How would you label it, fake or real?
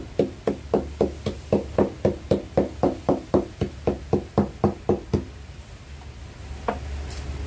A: real